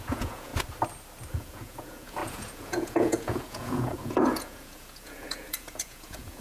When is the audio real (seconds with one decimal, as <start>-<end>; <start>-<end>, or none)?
0.5-1.3